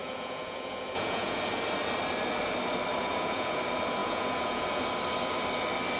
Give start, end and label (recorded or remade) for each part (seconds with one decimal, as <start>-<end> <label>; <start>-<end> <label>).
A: 0.0-1.4 remade; 1.4-3.0 recorded; 3.0-3.6 remade; 3.6-4.0 recorded; 4.0-4.8 remade; 4.8-6.0 recorded